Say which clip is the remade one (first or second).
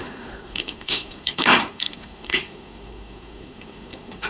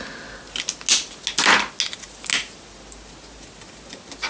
first